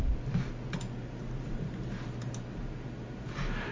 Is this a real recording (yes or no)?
yes